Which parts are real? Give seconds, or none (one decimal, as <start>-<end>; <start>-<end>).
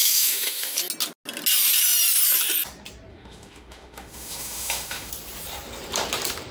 0.8-3.1; 5.1-6.5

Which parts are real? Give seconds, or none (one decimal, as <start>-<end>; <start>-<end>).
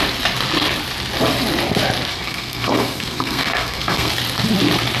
0.0-2.1; 4.1-5.0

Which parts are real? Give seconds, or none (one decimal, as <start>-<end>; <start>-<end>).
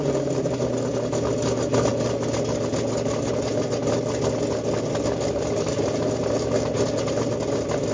0.0-7.9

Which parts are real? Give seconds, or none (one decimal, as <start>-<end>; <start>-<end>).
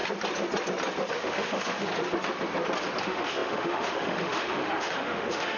0.0-1.1; 1.9-3.0